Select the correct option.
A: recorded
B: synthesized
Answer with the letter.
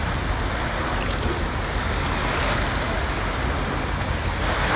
A